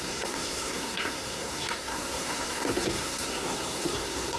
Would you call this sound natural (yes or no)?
no